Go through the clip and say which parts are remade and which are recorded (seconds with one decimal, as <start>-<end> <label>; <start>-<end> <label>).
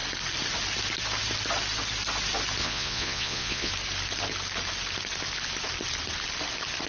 0.0-2.6 recorded; 2.6-3.7 remade; 3.7-6.9 recorded